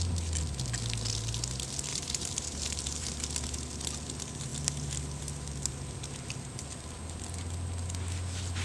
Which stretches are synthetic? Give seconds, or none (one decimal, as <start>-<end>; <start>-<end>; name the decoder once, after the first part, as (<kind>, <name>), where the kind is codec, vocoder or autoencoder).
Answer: 1.9-3.1 (vocoder, BigVGAN v2)

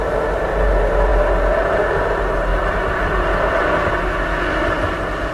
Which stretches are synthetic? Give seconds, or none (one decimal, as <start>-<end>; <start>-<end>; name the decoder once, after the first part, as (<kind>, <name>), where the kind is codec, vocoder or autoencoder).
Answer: 2.5-3.6 (vocoder, BigVGAN v2)

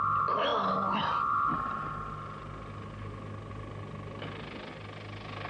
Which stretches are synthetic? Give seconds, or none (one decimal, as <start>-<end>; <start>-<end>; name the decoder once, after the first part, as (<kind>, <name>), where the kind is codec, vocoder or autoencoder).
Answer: none

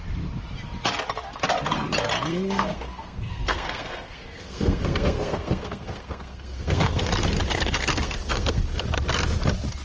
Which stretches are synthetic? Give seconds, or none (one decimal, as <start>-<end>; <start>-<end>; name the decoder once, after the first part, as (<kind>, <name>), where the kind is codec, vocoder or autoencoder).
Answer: 2.3-7.1 (codec, SNAC); 7.5-8.7

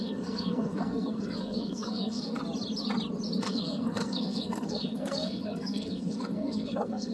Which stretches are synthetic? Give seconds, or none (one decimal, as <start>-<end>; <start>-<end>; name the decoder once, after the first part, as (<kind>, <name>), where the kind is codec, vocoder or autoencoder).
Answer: 0.0-2.4 (codec, SNAC); 3.4-7.1

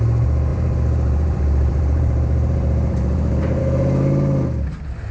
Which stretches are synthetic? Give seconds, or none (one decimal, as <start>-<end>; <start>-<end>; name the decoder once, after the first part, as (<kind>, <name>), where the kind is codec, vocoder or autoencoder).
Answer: 0.5-3.6 (vocoder, BigVGAN v2)